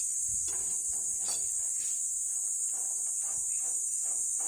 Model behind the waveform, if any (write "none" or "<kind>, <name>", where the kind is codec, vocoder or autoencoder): none